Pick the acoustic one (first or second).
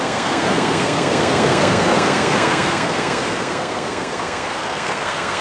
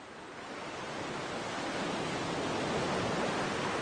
second